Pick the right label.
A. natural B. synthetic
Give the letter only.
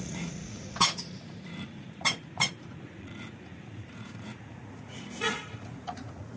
B